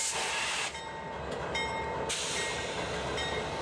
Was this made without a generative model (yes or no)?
yes